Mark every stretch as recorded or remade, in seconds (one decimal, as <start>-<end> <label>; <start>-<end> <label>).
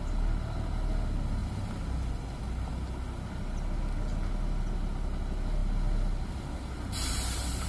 0.0-7.7 recorded